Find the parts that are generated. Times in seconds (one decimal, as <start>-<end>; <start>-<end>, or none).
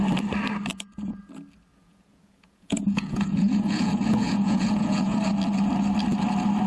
0.7-1.2; 1.7-5.2